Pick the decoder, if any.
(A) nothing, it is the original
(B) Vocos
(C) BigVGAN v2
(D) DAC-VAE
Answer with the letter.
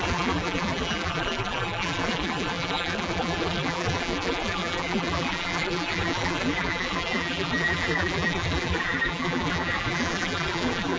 C